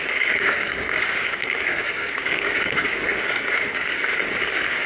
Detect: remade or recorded remade